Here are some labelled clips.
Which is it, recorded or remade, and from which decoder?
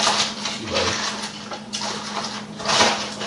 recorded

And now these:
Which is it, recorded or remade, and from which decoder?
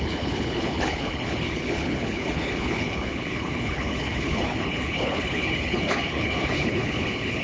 remade, codec, HILCodec